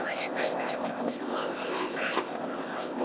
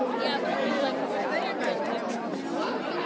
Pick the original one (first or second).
second